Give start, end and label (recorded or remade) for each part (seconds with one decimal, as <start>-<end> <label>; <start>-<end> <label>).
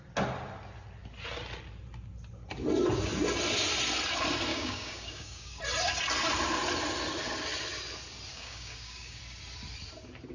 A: 0.0-4.5 recorded; 4.5-5.6 remade; 5.6-8.3 recorded; 8.3-9.2 remade; 9.2-10.3 recorded